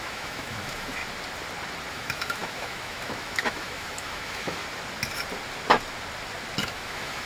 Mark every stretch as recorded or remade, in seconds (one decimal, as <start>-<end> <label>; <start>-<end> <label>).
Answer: 0.0-1.0 remade; 1.0-1.9 recorded; 1.9-4.6 remade; 4.6-6.6 recorded; 6.6-7.3 remade